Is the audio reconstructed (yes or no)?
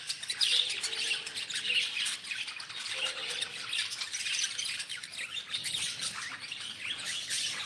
no